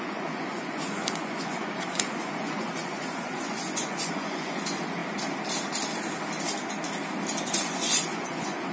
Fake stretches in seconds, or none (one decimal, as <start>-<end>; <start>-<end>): 0.0-5.0; 7.4-8.7